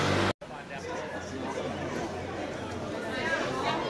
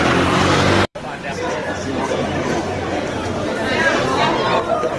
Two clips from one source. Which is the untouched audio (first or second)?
first